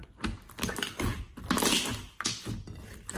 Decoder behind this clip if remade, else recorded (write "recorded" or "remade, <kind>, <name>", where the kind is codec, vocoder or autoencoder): recorded